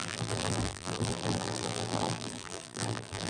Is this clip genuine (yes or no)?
no